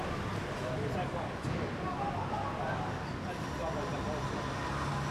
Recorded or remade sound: recorded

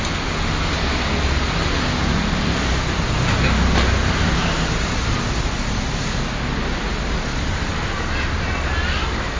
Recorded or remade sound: recorded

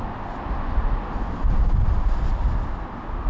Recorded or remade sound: recorded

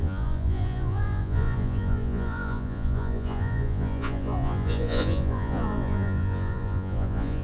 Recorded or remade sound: remade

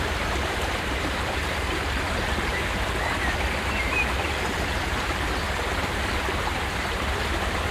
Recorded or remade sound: remade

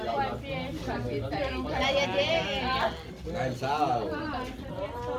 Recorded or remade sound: recorded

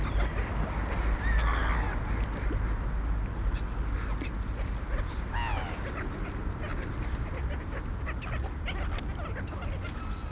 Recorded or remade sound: recorded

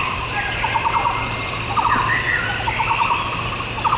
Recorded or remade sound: recorded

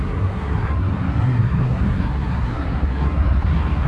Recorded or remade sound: remade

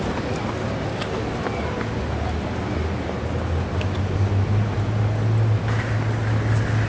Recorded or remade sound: recorded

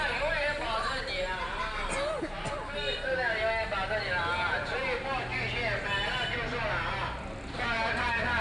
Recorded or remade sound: recorded